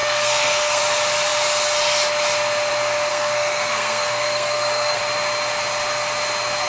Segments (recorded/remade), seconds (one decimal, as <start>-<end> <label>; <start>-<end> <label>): 0.0-0.8 remade; 0.8-3.1 recorded; 3.1-5.0 remade; 5.0-6.7 recorded